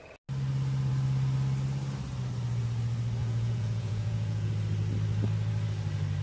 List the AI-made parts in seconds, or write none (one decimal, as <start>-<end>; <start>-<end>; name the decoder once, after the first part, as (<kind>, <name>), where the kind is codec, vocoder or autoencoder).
3.2-4.5 (vocoder, Vocos)